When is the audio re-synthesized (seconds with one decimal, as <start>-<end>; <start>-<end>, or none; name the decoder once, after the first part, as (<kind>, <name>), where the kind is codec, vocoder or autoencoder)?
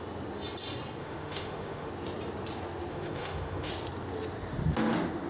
1.0-1.9 (autoencoder, DAC-VAE); 2.9-3.7